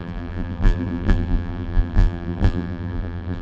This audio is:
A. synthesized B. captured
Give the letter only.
A